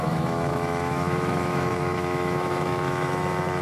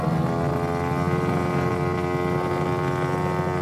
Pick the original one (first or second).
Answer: second